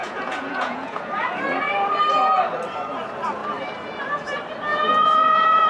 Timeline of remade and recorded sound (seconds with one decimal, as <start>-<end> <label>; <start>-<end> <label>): 0.0-1.1 remade; 1.1-4.7 recorded; 4.7-5.7 remade